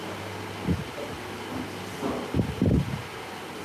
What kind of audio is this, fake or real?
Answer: fake